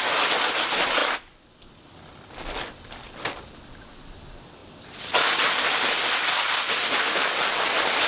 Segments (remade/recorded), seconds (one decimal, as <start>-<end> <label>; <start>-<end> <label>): 0.0-8.1 recorded